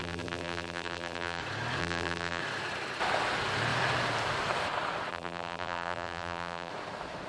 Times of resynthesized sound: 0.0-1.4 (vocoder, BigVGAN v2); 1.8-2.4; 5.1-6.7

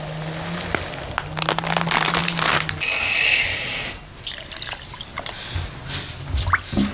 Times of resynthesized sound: none